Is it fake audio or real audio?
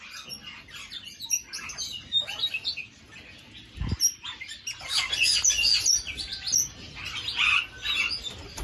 real